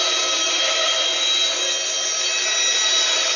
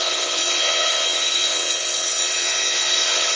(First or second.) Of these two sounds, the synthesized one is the second